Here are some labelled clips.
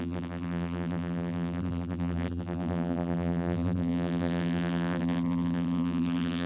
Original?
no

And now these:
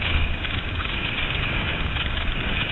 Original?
no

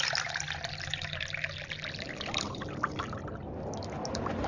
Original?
yes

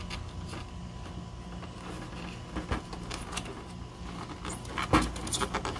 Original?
yes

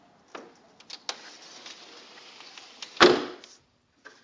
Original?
yes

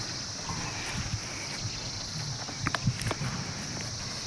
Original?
yes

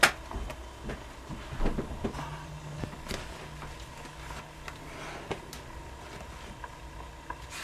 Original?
yes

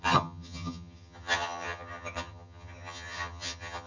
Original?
no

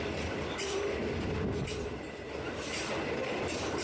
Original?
yes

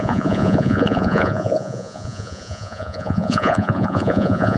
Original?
no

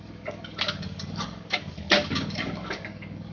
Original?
no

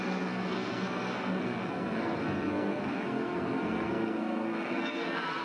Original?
no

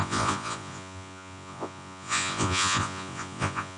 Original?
no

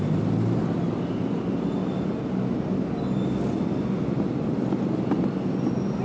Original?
yes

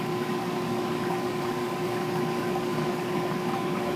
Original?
no